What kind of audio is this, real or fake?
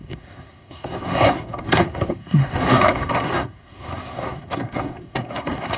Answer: fake